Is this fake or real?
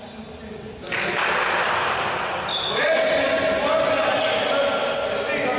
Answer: real